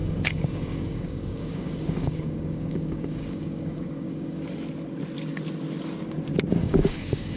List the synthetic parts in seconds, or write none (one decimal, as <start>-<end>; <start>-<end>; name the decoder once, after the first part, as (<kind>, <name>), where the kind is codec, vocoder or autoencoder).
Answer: 0.0-4.4 (codec, DAC); 6.6-7.4